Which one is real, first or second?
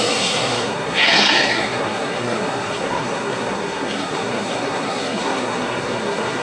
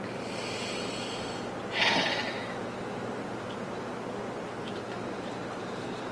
second